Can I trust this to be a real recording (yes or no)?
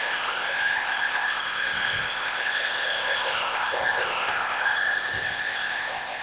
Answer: no